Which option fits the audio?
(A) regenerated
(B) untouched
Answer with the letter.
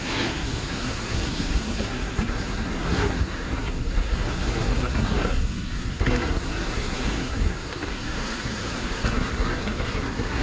A